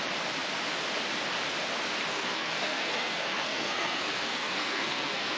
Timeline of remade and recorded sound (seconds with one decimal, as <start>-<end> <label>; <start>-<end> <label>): 0.0-2.1 recorded; 2.1-5.4 remade